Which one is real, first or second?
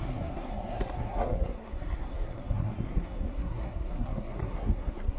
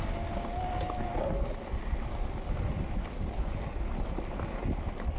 second